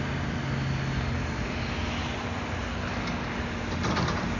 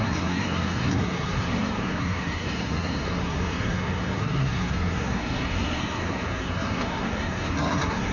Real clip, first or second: first